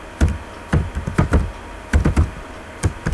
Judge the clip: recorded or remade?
recorded